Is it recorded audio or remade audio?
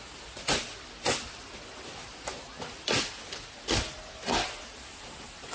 recorded